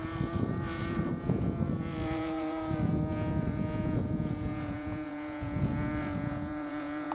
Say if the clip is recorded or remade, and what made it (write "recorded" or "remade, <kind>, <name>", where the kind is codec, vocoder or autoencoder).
remade, vocoder, Vocos